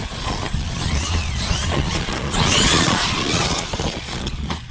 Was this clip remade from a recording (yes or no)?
yes